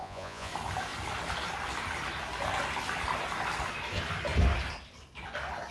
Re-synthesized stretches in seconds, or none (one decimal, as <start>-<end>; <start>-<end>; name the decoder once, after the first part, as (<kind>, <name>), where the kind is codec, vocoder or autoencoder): 0.0-0.5 (vocoder, Vocos)